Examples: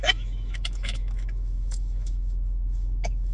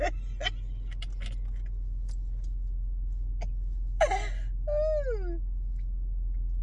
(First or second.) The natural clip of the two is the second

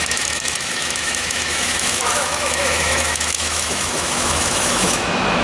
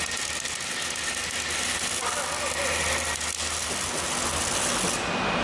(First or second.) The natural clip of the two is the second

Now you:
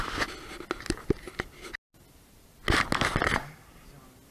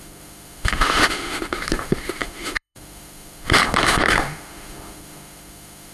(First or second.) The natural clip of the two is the first